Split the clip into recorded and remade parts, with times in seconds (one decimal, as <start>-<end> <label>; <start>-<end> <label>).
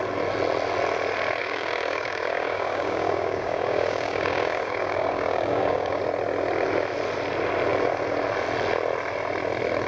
0.0-1.4 recorded; 1.4-6.0 remade; 6.0-9.9 recorded